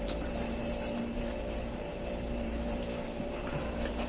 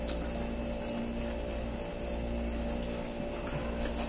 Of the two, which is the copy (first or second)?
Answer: first